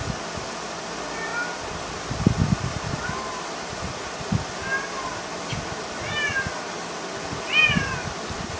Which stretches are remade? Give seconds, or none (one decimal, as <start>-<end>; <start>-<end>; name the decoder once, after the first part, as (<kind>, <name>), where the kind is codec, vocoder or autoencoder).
none